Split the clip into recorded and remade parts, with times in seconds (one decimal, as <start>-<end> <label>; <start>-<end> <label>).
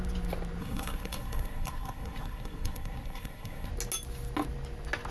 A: 0.0-0.6 recorded; 0.6-3.7 remade; 3.7-5.1 recorded